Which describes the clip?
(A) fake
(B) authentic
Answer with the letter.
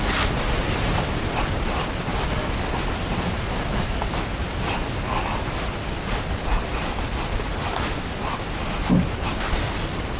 B